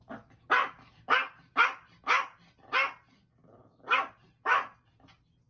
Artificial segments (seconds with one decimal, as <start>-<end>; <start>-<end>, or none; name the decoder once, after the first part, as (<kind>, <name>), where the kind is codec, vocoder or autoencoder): none